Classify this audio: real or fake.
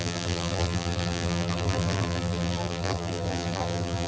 fake